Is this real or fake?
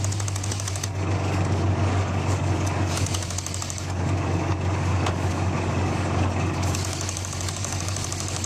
fake